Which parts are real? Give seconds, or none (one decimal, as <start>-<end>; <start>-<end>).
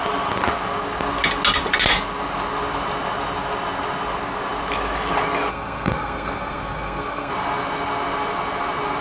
0.0-5.5; 7.3-9.0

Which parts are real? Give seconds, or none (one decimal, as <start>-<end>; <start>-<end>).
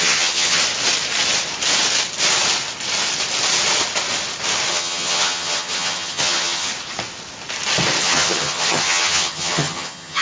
0.6-4.7; 6.7-8.0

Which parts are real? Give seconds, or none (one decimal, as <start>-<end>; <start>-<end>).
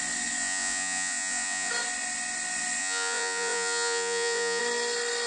0.0-0.4; 1.7-2.8; 4.6-5.3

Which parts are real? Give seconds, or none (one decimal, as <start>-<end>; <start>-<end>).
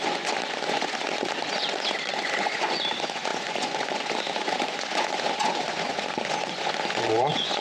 none